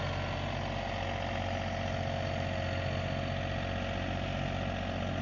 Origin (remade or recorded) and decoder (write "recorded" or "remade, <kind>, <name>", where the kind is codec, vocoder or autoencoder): recorded